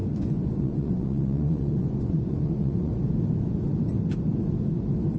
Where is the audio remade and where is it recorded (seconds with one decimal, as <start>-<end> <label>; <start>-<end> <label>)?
0.0-2.9 remade; 2.9-5.2 recorded

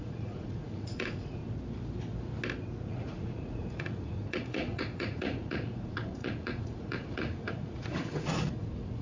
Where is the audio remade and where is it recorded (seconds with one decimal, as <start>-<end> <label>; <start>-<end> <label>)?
0.0-1.4 remade; 1.4-2.9 recorded; 2.9-9.0 remade

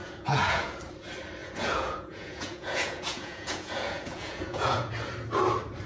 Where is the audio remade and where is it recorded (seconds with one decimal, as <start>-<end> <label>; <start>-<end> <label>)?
0.0-0.8 remade; 0.8-1.4 recorded; 1.4-4.9 remade; 4.9-5.9 recorded

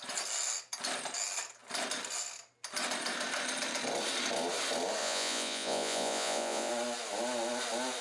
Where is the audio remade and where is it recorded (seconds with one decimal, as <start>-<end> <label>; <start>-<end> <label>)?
0.0-5.0 recorded; 5.0-6.7 remade; 6.7-8.0 recorded

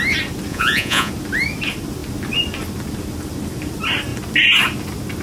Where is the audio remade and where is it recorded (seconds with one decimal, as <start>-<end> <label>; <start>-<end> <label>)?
0.0-0.5 recorded; 0.5-1.1 remade; 1.1-5.2 recorded

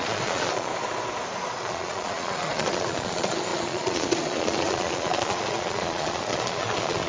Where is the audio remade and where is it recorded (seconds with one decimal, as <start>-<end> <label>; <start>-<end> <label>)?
0.0-0.7 remade; 0.7-1.6 recorded; 1.6-7.1 remade